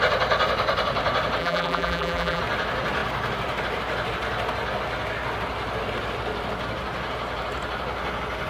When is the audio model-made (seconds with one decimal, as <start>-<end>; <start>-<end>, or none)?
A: 1.4-2.4